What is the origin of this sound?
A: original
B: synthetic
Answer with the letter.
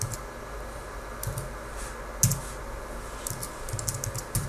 A